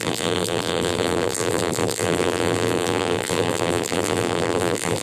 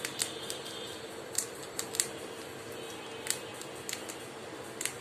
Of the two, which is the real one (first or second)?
second